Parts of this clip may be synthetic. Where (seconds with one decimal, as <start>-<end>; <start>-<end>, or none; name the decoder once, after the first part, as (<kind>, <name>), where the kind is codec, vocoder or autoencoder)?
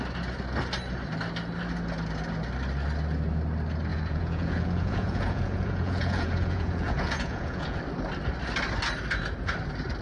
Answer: 3.9-7.8 (vocoder, Vocos)